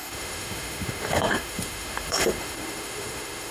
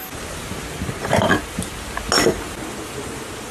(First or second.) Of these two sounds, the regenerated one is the first